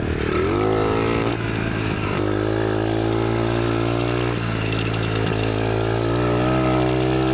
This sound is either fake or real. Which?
real